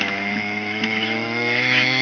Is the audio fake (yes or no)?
yes